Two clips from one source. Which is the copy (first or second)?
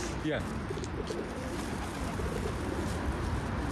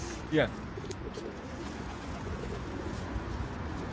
second